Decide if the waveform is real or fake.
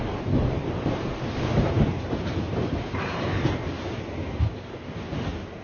fake